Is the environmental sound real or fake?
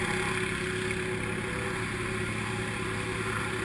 real